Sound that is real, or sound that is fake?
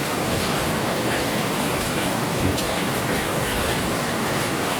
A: fake